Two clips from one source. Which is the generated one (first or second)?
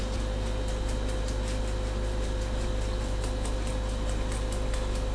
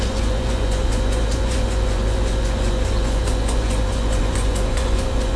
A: second